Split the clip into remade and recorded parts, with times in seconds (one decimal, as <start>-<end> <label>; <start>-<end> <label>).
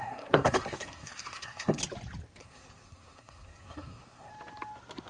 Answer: 0.0-1.8 remade; 1.8-2.4 recorded; 2.4-4.3 remade; 4.3-5.1 recorded